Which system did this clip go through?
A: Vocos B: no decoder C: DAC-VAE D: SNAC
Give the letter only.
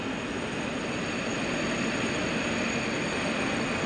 B